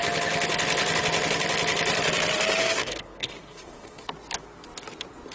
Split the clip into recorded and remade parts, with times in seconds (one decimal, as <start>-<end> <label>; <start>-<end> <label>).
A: 0.0-2.6 recorded; 2.6-4.1 remade; 4.1-5.3 recorded